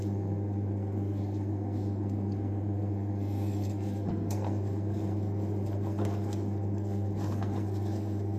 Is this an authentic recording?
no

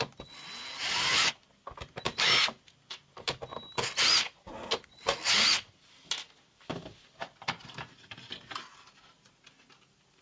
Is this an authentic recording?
yes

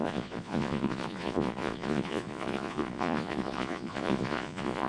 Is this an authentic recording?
no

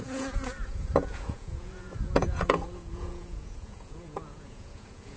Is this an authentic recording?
no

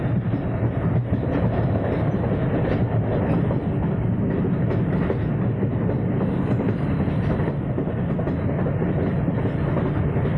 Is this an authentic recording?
yes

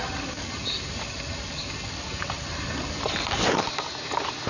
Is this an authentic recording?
yes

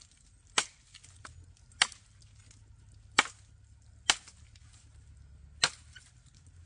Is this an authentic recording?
yes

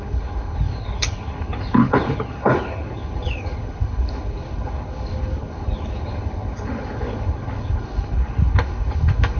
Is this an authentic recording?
no